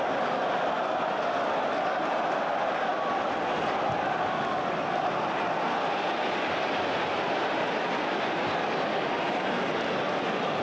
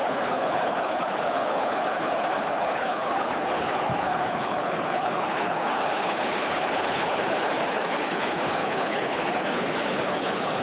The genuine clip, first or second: first